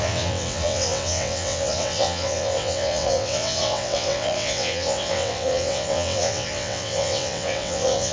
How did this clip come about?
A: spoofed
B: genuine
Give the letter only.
A